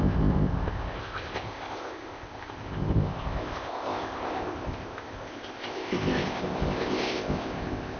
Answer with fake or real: fake